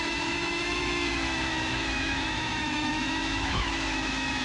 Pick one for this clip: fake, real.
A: fake